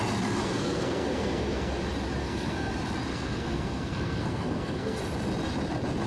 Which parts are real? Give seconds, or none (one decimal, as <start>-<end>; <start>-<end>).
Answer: 0.0-0.4; 1.7-2.2; 2.7-3.1; 5.0-6.1